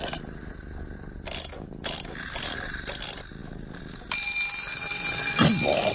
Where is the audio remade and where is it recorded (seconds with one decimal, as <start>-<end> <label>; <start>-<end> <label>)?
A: 0.0-5.9 recorded